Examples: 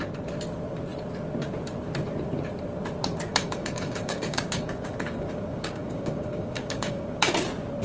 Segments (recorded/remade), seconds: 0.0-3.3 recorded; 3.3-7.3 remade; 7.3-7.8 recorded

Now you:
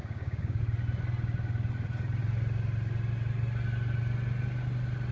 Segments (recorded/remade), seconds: 0.0-0.6 remade; 0.6-5.1 recorded

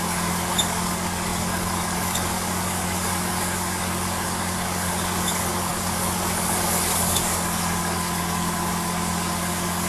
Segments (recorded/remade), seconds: 0.0-9.9 remade

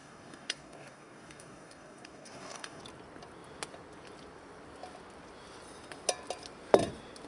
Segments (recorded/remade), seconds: 0.0-2.8 remade; 2.8-7.3 recorded

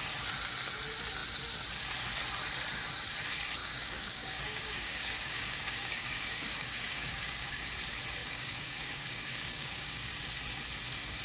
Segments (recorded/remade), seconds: 0.0-3.6 recorded; 3.6-7.7 remade; 7.7-8.2 recorded; 8.2-10.1 remade; 10.1-11.2 recorded

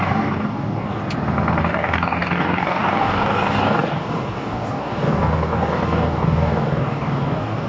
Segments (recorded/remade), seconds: 0.0-1.0 remade; 1.0-1.6 recorded; 1.6-7.7 remade

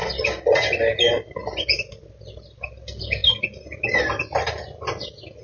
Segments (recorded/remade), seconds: 0.0-5.4 recorded

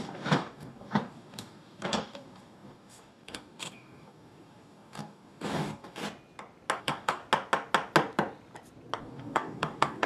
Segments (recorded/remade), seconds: 0.0-6.0 remade; 6.0-6.8 recorded; 6.8-7.2 remade; 7.2-9.0 recorded; 9.0-10.1 remade